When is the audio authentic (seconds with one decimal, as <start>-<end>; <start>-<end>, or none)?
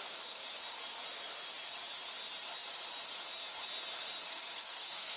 0.0-4.3